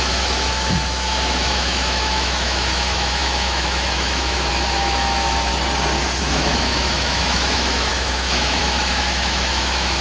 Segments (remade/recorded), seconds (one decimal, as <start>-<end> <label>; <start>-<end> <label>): 0.0-5.5 remade; 5.5-6.2 recorded; 6.2-10.0 remade